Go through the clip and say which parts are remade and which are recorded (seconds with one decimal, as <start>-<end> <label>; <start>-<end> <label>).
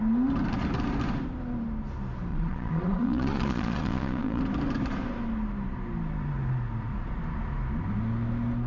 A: 0.0-2.3 recorded; 2.3-4.4 remade; 4.4-8.7 recorded